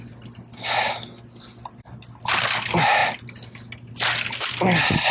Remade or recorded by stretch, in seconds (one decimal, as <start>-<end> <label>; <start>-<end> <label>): 0.0-5.1 recorded